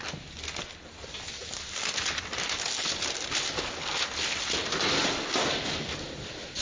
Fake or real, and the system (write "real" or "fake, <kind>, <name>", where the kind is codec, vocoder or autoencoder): real